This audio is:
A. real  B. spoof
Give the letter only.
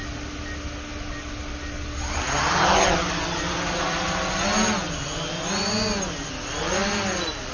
A